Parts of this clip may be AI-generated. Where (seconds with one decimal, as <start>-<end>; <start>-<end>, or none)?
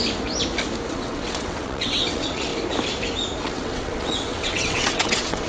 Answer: 0.9-2.5; 3.4-5.5